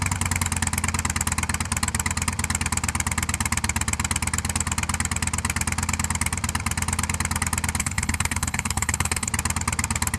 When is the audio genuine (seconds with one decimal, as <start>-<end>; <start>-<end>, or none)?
0.0-7.8; 9.3-10.2